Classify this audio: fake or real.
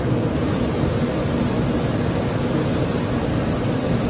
real